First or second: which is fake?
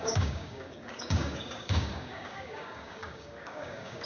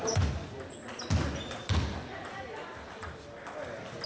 first